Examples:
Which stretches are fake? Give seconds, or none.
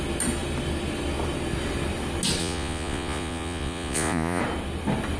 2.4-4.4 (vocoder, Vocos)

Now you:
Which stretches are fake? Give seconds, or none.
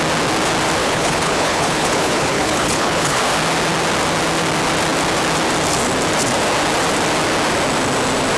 0.8-3.2 (codec, HILCodec)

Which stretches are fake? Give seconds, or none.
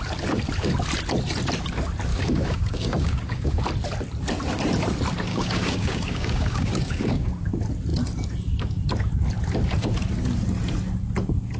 2.1-3.6 (codec, DAC); 5.3-7.3